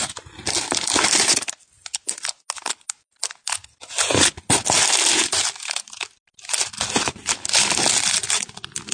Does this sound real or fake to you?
real